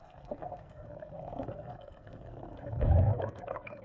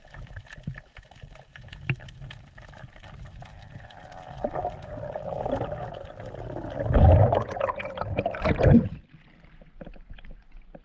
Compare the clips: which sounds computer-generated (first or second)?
first